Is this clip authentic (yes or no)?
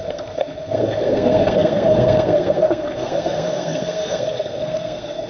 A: no